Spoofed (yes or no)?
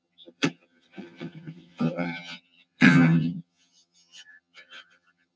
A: yes